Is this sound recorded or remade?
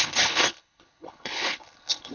remade